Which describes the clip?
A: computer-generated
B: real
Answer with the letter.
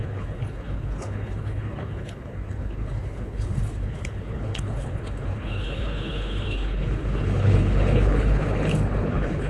A